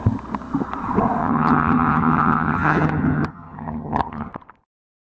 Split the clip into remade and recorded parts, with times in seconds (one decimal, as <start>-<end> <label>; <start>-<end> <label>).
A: 0.0-1.2 recorded; 1.2-4.3 remade; 4.3-5.1 recorded